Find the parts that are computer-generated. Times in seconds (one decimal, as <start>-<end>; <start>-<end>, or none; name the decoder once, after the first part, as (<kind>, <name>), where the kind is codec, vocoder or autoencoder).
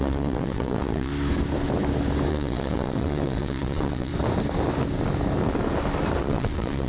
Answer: 0.0-1.1 (vocoder, WaveNeXt); 2.3-4.1; 6.2-6.9